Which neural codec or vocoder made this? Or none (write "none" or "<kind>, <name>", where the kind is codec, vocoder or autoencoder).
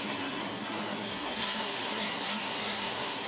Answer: codec, SNAC